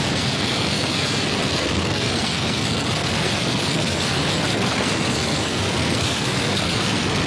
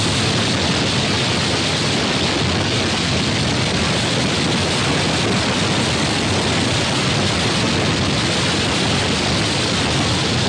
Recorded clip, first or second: second